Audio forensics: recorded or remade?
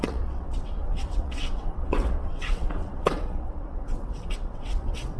remade